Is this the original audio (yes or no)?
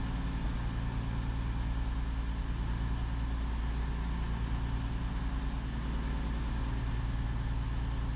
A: yes